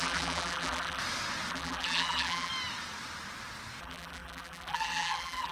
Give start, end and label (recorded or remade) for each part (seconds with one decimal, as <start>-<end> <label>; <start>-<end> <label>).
0.0-1.0 remade; 1.0-1.5 recorded; 1.5-2.5 remade; 2.5-3.8 recorded; 3.8-5.5 remade